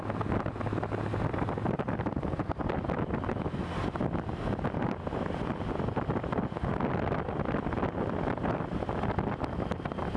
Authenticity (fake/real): real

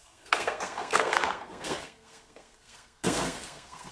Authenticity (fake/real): fake